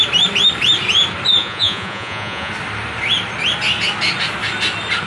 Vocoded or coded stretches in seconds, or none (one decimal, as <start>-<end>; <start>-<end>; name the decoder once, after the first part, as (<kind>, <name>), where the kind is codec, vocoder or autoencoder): 1.4-2.5 (vocoder, Vocos)